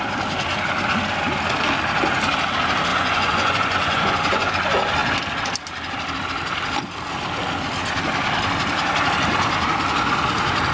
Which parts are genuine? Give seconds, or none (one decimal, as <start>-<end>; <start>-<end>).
0.0-2.9; 4.5-10.7

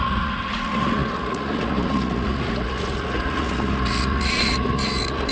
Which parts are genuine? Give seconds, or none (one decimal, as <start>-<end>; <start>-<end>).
none